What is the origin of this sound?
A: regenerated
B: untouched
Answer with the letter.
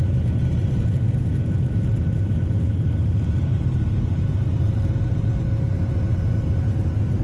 B